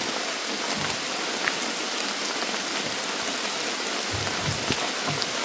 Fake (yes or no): no